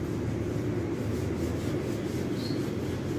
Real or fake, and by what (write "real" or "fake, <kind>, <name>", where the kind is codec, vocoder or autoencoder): real